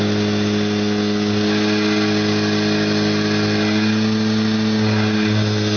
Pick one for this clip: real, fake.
real